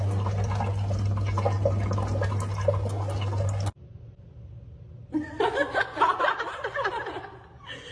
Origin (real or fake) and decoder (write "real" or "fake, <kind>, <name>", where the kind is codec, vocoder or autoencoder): real